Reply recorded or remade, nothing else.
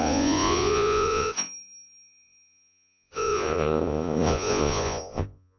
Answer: remade